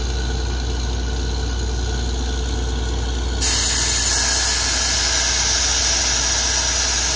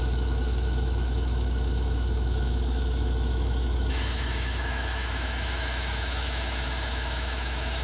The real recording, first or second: first